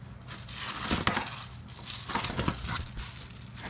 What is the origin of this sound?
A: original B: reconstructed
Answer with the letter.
A